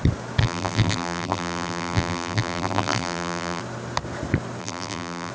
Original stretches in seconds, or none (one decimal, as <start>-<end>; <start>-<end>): 0.0-0.4; 3.6-4.6